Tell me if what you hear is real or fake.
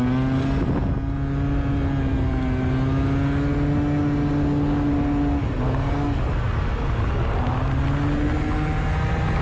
real